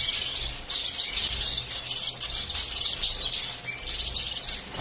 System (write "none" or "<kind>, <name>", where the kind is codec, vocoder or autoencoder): none